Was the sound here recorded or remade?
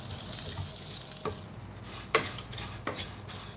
recorded